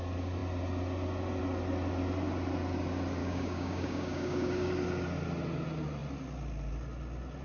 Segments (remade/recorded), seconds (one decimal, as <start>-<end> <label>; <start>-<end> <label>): 0.0-3.2 recorded; 3.2-4.7 remade; 4.7-7.4 recorded